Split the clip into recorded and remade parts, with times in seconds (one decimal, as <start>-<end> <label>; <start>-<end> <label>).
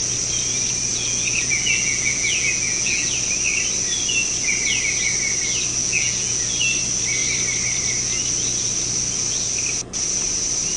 0.0-0.9 recorded; 0.9-3.1 remade; 3.1-5.8 recorded; 5.8-6.5 remade; 6.5-10.8 recorded